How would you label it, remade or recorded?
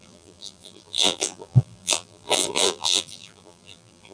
remade